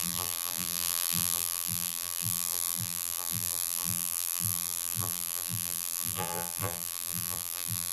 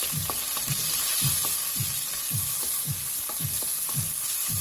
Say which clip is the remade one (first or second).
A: first